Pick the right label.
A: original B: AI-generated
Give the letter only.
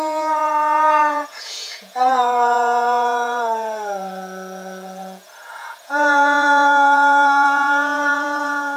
B